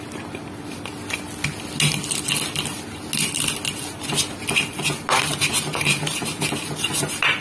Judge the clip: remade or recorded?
recorded